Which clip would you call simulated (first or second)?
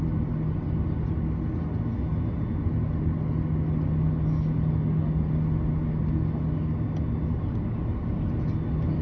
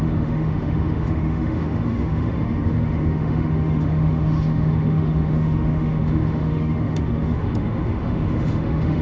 second